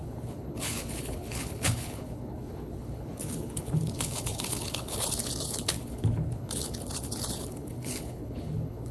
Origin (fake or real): fake